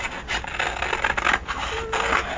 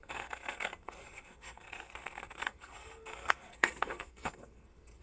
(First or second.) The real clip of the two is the first